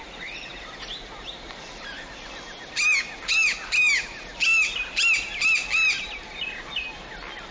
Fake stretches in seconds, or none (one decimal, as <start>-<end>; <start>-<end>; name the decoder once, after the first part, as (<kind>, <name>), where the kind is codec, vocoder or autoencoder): none